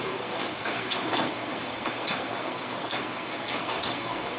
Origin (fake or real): fake